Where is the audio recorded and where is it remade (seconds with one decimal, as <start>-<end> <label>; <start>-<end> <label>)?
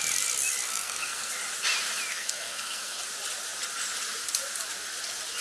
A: 0.0-0.7 recorded; 0.7-1.3 remade; 1.3-2.1 recorded; 2.1-3.0 remade; 3.0-5.4 recorded